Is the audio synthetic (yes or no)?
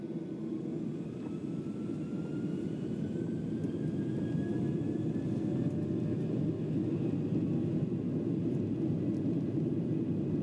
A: no